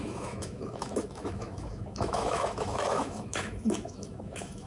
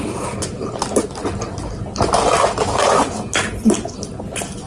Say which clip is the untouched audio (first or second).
second